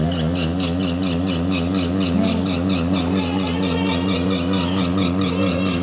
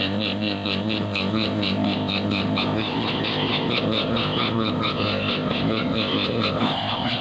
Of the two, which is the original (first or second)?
first